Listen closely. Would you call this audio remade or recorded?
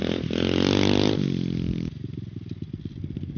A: recorded